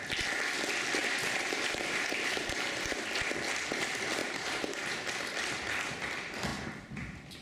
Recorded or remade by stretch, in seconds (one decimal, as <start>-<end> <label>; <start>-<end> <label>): 0.0-1.0 recorded; 1.0-2.9 remade; 2.9-4.2 recorded; 4.2-5.3 remade; 5.3-7.4 recorded